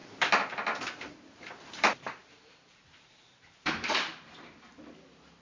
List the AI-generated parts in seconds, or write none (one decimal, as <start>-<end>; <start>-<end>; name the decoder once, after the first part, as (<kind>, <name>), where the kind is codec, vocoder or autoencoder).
0.0-1.5 (vocoder, BigVGAN v2); 2.2-4.8